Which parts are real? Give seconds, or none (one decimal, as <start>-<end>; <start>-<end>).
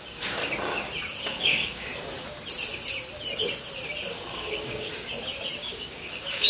0.4-1.2; 1.9-4.1; 4.9-5.6